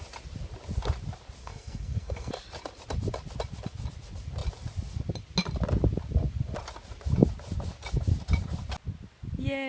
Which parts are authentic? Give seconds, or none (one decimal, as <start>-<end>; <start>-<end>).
0.0-1.4; 2.3-9.7